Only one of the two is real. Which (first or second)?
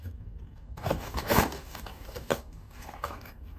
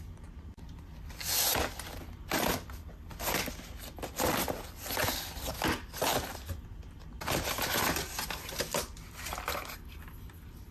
second